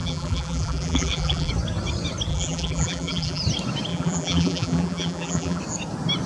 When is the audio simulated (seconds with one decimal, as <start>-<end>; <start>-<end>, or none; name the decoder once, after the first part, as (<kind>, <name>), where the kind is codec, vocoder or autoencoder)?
0.0-1.5 (vocoder, BigVGAN v2); 2.3-3.4; 3.9-5.6